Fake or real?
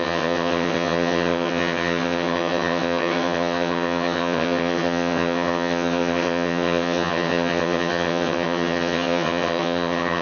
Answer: fake